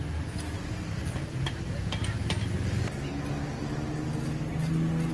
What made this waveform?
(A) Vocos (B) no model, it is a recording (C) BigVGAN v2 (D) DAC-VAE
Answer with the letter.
B